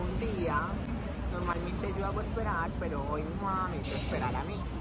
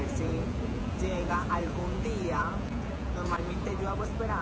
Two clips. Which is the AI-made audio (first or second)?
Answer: second